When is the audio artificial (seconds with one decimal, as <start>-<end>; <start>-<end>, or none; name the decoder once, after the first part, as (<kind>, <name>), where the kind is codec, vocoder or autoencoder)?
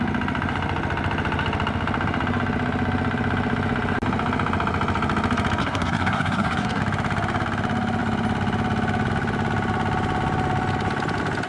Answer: 5.6-6.8 (codec, SNAC)